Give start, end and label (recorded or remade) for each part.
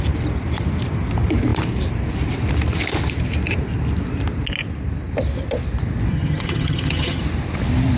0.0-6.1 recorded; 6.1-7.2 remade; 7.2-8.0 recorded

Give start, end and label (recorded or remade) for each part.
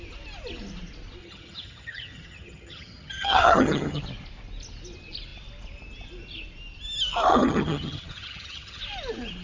0.0-1.2 recorded; 1.2-4.0 remade; 4.0-7.3 recorded; 7.3-8.8 remade; 8.8-9.4 recorded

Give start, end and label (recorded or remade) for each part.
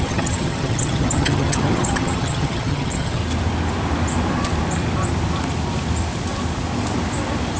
0.0-3.2 remade; 3.2-7.6 recorded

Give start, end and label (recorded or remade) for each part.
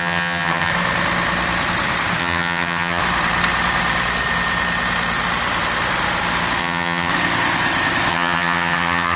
0.0-0.7 remade; 0.7-2.2 recorded; 2.2-3.0 remade; 3.0-6.6 recorded; 6.6-7.1 remade; 7.1-8.1 recorded; 8.1-9.2 remade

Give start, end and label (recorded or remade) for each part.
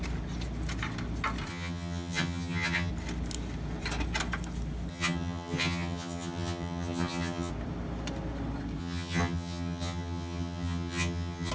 0.0-1.5 recorded; 1.5-2.9 remade; 2.9-4.9 recorded; 4.9-7.5 remade; 7.5-8.8 recorded; 8.8-11.5 remade